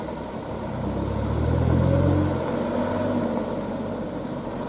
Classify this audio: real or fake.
real